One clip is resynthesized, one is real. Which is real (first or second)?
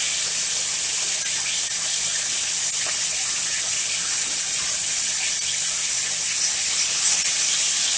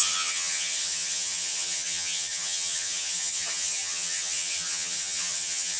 first